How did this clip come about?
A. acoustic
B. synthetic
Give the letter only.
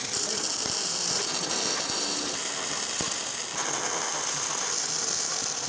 A